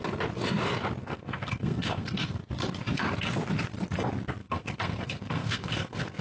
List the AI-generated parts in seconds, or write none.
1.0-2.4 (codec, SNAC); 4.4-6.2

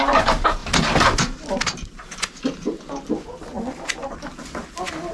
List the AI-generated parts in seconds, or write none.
none

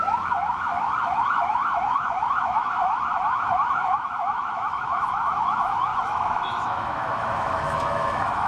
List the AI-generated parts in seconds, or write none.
0.0-8.5 (autoencoder, DAC-VAE)

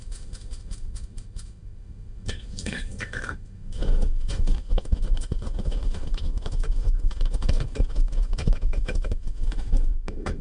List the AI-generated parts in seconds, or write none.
0.0-10.4 (autoencoder, DAC-VAE)

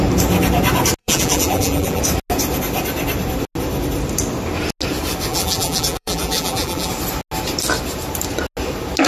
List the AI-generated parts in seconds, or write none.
1.0-2.0 (vocoder, BigVGAN v2); 5.3-6.9

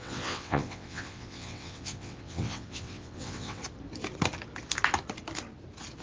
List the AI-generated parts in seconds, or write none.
0.0-3.6 (vocoder, WaveNeXt)

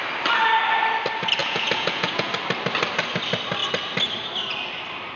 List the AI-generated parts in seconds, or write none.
1.4-2.3 (vocoder, Vocos)

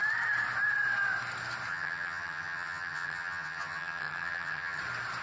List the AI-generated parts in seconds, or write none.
1.7-4.8 (vocoder, HiFi-GAN)